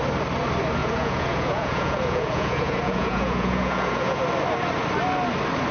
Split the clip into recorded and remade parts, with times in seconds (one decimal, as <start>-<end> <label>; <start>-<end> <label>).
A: 0.0-0.8 recorded; 0.8-4.2 remade; 4.2-5.7 recorded